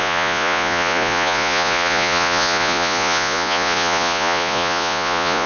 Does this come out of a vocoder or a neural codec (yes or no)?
yes